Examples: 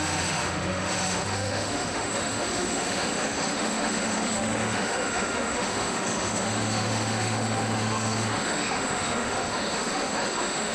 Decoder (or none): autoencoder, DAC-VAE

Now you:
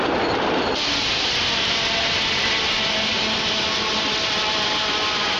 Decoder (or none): none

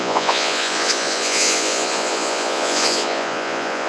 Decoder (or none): vocoder, Vocos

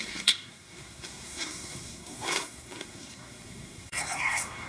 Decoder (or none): codec, SNAC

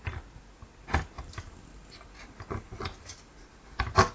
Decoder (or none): none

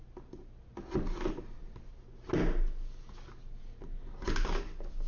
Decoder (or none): none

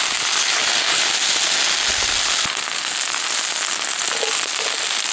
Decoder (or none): none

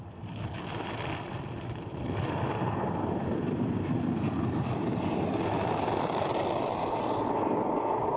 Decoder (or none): none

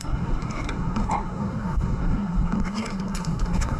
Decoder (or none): codec, SNAC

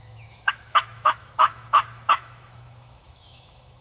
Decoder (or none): autoencoder, DAC-VAE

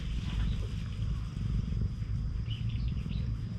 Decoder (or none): vocoder, BigVGAN v2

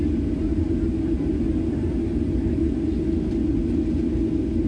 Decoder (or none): none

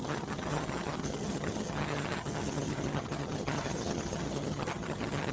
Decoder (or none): vocoder, HiFi-GAN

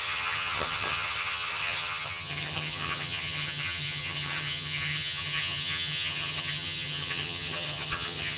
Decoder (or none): vocoder, HiFi-GAN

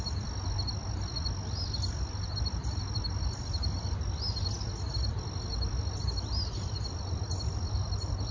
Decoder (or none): none